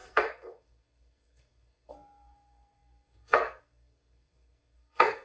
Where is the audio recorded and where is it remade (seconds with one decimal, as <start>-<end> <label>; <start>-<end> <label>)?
0.0-5.2 remade